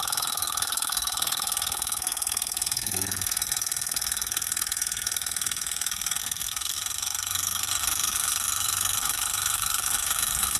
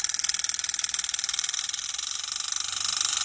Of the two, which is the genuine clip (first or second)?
second